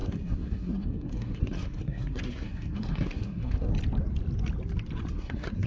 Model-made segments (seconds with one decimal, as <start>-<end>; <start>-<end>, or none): 0.0-3.7; 5.1-5.7

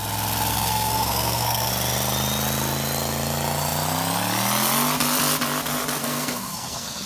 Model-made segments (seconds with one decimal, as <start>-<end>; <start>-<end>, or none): 0.5-1.7; 6.0-7.1

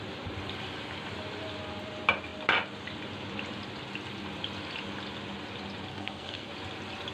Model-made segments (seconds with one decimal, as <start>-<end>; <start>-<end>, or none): 5.9-6.5